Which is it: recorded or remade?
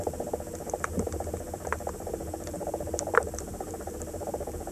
remade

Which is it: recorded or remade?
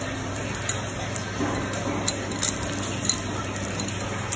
recorded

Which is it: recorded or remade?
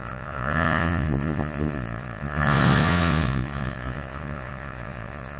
remade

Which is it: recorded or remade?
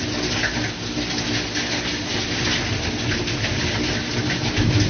recorded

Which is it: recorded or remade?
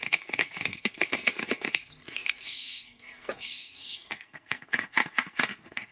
remade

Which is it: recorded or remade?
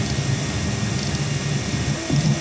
recorded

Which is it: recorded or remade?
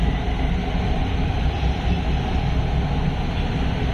recorded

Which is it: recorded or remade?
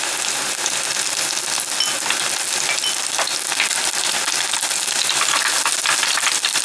recorded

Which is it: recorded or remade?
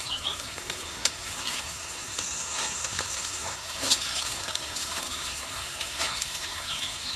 remade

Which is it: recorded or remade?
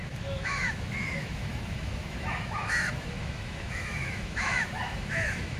remade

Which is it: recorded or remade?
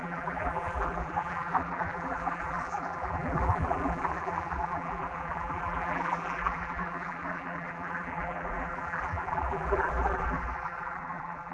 remade